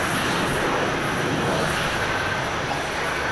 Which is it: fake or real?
real